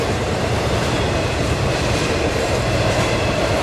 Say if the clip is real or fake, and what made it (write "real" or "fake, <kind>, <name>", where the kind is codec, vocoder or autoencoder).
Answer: fake, vocoder, BigVGAN v2